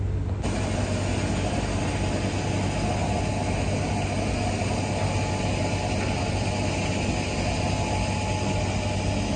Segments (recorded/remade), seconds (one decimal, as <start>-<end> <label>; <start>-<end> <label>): 0.0-9.4 recorded